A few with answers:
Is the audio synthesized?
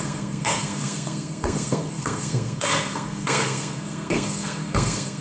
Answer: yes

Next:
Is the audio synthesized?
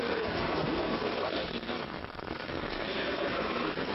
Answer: yes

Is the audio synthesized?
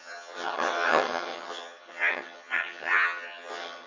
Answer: yes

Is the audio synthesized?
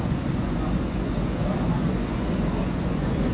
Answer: yes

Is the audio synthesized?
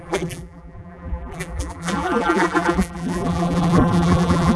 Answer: yes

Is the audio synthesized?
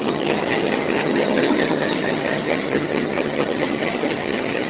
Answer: yes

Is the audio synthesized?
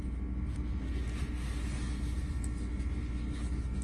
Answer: no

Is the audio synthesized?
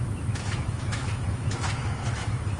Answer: yes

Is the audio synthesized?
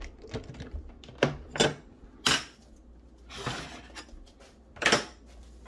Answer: no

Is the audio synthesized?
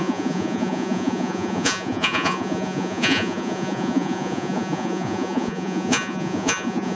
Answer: yes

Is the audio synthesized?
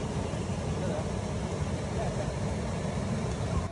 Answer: no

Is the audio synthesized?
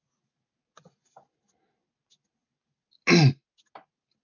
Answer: no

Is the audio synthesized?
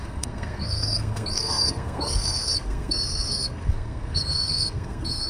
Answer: yes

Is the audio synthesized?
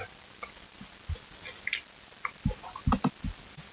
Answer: no